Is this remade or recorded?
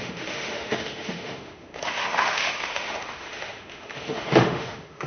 remade